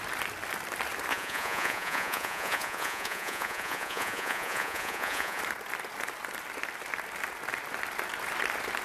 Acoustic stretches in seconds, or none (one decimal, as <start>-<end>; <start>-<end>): 0.0-1.1; 5.4-8.8